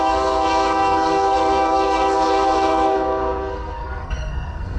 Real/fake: fake